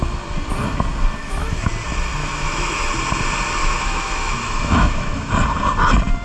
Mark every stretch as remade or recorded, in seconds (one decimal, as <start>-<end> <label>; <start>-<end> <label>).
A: 0.0-1.2 recorded; 1.2-1.7 remade; 1.7-2.2 recorded; 2.2-2.9 remade; 2.9-3.6 recorded; 3.6-5.3 remade; 5.3-6.2 recorded